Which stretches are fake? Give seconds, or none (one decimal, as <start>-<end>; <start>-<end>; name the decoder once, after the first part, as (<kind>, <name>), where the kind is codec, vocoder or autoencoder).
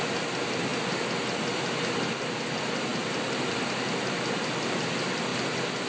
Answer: none